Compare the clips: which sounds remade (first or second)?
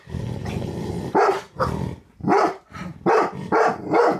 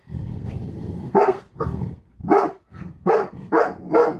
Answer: second